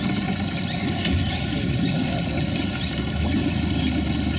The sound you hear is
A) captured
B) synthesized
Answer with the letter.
A